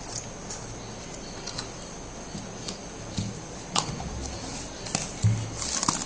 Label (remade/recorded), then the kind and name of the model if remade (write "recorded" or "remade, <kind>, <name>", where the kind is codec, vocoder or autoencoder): recorded